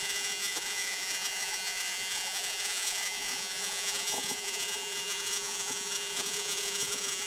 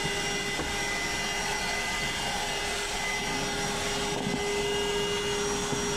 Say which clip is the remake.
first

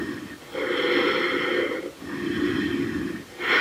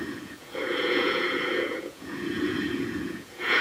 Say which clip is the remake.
second